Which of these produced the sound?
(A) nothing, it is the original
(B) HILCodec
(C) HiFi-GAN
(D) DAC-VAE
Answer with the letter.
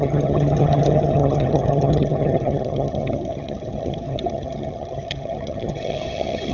C